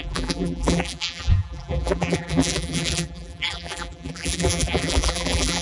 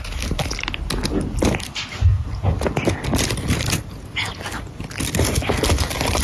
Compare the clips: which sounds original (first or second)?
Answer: second